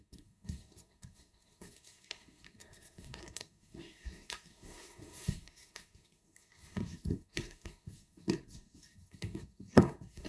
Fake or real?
fake